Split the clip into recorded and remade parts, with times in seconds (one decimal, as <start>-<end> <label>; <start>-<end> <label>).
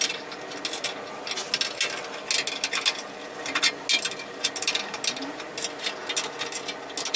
0.0-7.2 recorded